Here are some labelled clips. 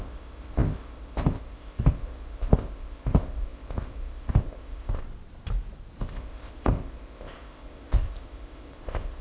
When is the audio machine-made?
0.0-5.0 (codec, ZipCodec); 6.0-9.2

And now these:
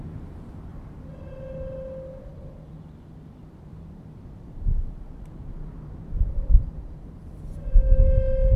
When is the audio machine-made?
2.3-7.3 (vocoder, BigVGAN v2)

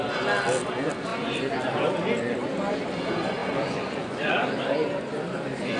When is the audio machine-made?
3.4-4.6 (vocoder, Vocos)

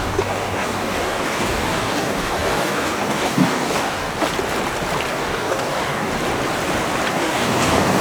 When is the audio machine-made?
0.0-4.1 (codec, DAC); 5.1-6.1; 7.1-8.0

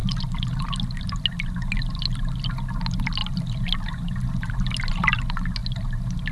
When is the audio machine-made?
none